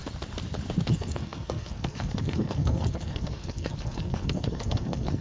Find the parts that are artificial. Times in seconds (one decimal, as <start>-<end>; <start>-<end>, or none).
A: 0.9-5.2